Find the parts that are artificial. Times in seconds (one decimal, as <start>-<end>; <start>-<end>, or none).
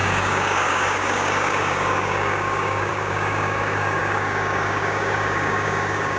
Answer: 0.0-6.2